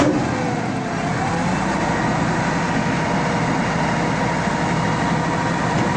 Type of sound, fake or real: real